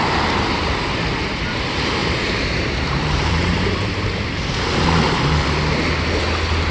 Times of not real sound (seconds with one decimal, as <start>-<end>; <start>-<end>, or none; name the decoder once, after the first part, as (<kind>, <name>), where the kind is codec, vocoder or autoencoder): 2.0-5.3 (vocoder, BigVGAN v2)